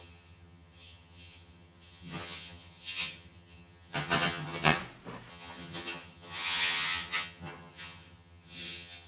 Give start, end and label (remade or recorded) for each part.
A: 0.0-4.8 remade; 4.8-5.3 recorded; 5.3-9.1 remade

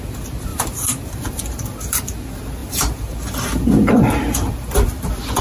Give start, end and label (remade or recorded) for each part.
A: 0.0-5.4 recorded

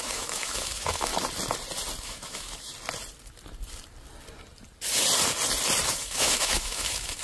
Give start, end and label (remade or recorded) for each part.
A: 0.0-1.1 remade; 1.1-2.0 recorded; 2.0-2.7 remade; 2.7-5.9 recorded; 5.9-7.2 remade

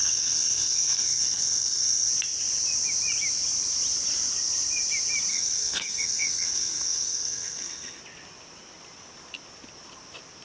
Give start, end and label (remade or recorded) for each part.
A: 0.0-2.1 remade; 2.1-5.3 recorded; 5.3-8.0 remade; 8.0-10.4 recorded

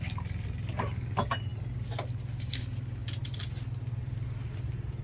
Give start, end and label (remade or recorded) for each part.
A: 0.0-5.0 recorded